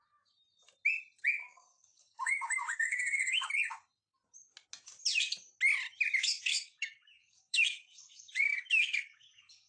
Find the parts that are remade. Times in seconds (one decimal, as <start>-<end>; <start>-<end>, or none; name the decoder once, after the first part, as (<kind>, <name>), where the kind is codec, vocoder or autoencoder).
1.4-3.5 (codec, DAC); 6.5-9.7